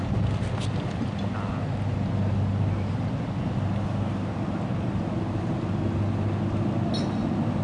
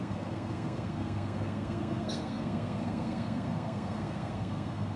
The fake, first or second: second